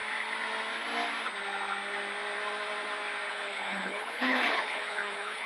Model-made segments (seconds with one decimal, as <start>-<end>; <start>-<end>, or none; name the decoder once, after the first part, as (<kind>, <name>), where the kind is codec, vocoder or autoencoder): 3.3-5.5 (codec, HILCodec)